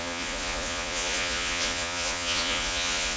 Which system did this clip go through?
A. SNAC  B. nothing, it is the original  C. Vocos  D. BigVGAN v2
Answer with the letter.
C